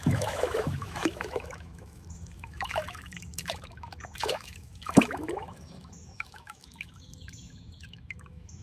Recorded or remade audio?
remade